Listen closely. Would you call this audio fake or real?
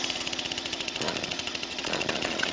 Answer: fake